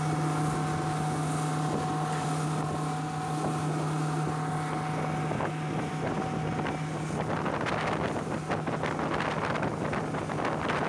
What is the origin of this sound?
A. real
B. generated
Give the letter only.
A